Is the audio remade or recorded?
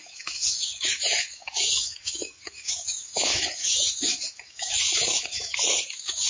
remade